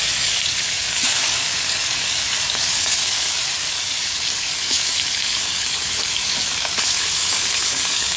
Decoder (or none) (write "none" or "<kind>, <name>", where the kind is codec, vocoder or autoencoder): codec, DAC